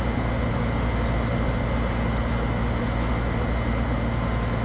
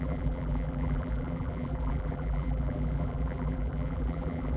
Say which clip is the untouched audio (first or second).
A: first